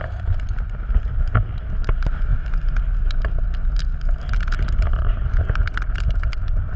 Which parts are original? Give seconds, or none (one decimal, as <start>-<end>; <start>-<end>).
0.0-6.8

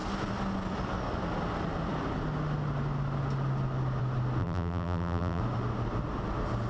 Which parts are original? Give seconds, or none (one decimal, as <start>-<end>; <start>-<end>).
0.0-4.4; 5.4-6.7